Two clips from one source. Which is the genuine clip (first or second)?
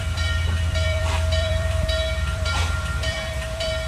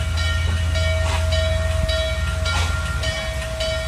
second